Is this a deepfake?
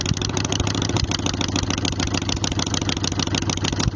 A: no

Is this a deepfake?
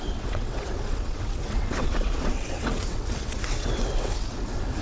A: yes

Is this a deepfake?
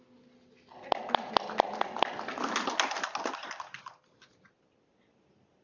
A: no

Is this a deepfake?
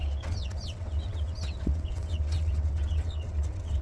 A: yes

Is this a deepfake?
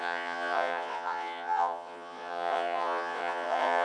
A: yes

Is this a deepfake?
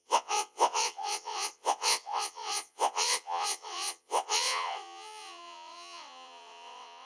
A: yes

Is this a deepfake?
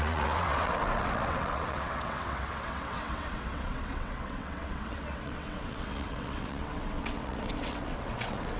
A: yes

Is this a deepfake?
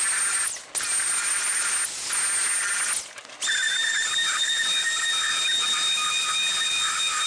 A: no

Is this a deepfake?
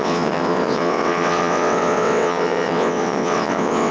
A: yes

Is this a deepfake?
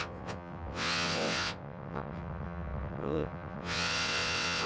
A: yes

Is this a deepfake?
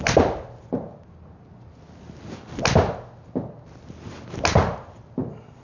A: no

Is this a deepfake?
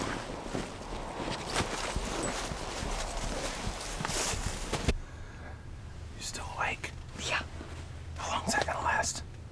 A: no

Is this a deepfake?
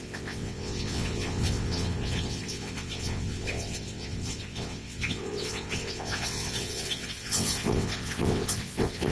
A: yes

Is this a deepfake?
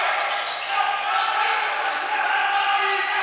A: no